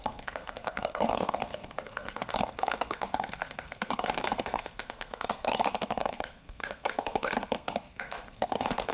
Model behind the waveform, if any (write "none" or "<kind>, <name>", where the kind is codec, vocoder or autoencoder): codec, SNAC